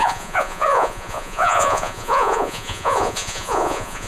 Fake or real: fake